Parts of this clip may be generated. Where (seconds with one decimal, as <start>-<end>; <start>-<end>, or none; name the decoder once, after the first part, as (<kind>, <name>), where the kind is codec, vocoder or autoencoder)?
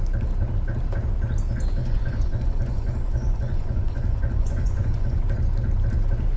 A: 1.8-5.2 (vocoder, Vocos)